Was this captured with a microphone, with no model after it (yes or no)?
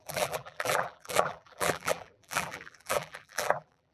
no